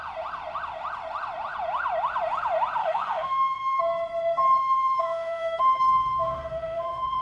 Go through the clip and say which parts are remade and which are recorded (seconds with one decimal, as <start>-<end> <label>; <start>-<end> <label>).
0.0-2.8 recorded; 2.8-3.8 remade; 3.8-4.6 recorded; 4.6-7.2 remade